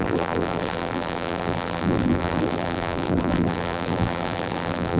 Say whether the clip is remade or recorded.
remade